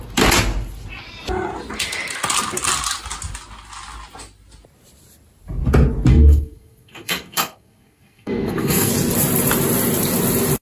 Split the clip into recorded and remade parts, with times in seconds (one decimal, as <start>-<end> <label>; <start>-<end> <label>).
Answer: 0.0-6.1 recorded; 6.1-8.9 remade; 8.9-10.6 recorded